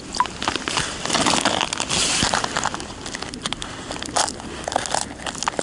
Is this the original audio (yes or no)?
yes